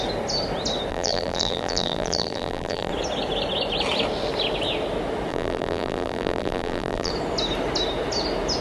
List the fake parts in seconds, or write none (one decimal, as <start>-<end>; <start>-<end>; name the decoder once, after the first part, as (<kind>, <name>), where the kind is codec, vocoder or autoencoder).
0.9-2.9 (vocoder, BigVGAN v2); 5.3-7.1